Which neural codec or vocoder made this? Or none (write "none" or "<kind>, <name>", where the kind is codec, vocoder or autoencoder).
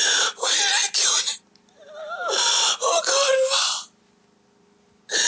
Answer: none